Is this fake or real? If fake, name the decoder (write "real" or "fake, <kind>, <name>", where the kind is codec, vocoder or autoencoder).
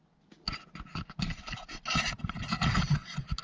real